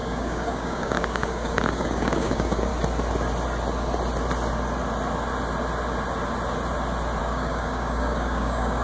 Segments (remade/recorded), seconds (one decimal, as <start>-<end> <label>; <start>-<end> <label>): 0.0-2.7 remade; 2.7-7.2 recorded; 7.2-8.8 remade